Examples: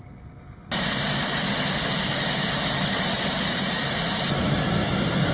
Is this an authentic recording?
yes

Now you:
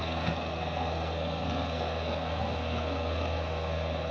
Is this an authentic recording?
no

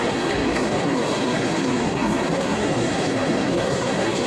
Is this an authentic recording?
no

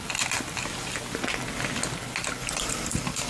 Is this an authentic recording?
yes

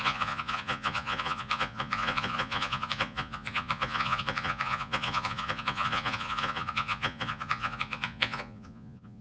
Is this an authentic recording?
no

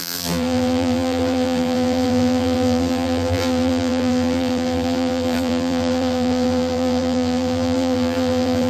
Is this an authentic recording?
no